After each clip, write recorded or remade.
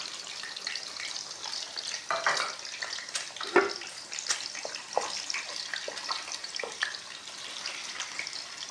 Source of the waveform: recorded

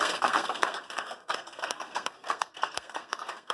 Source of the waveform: remade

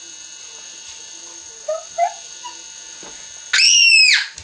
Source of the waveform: recorded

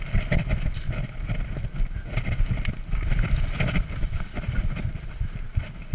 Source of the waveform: recorded